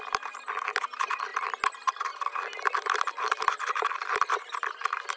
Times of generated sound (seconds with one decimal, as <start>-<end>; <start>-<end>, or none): none